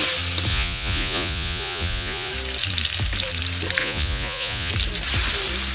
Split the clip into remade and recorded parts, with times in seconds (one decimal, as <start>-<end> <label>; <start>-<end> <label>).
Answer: 0.0-0.5 recorded; 0.5-2.3 remade; 2.3-3.8 recorded; 3.8-4.7 remade; 4.7-5.7 recorded